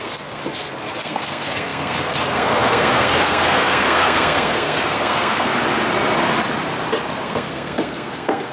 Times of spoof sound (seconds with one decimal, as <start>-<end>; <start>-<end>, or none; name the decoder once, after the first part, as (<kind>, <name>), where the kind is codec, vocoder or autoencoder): 0.0-0.4 (codec, SNAC); 1.0-5.5; 7.2-8.5